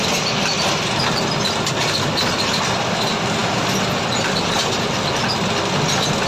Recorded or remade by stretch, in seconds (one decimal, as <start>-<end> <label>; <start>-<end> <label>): 0.0-6.3 recorded

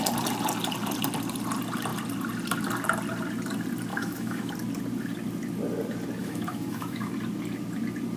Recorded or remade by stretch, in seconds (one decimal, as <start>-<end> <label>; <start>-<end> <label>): 0.0-3.9 recorded; 3.9-4.5 remade; 4.5-6.2 recorded; 6.2-7.1 remade; 7.1-8.2 recorded

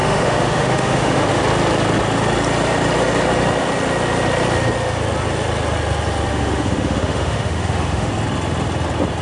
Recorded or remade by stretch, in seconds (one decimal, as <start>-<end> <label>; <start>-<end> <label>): 0.0-1.4 remade; 1.4-6.3 recorded; 6.3-8.1 remade; 8.1-9.2 recorded

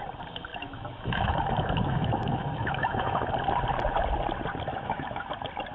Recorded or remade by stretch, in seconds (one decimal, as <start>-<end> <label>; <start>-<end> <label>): 0.0-0.5 recorded; 0.5-3.3 remade; 3.3-4.7 recorded; 4.7-5.3 remade; 5.3-5.7 recorded

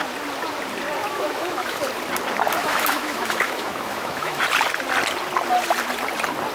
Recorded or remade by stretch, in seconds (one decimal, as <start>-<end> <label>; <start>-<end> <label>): 0.0-1.0 recorded; 1.0-1.8 remade; 1.8-2.6 recorded; 2.6-4.4 remade; 4.4-6.5 recorded